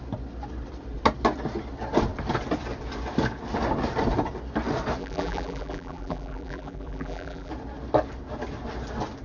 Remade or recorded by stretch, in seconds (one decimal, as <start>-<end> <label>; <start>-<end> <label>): 0.0-5.0 recorded; 5.0-7.5 remade; 7.5-9.2 recorded